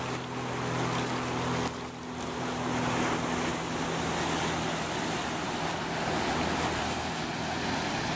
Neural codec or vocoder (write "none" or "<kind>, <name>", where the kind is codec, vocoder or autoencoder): none